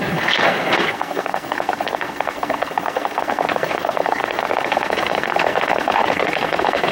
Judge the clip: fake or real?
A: fake